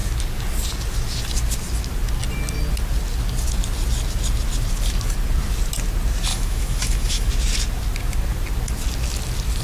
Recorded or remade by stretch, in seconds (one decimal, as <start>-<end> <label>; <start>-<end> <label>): 0.0-6.3 recorded; 6.3-7.3 remade; 7.3-9.6 recorded